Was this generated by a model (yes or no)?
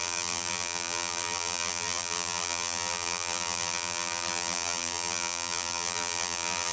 yes